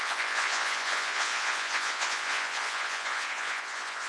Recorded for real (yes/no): no